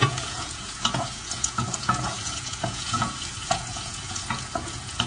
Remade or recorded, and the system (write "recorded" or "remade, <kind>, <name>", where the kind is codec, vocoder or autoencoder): remade, vocoder, Vocos